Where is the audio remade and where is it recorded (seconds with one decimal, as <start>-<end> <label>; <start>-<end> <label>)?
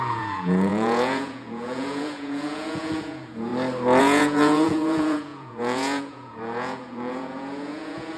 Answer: 0.0-3.5 remade; 3.5-4.0 recorded; 4.0-8.2 remade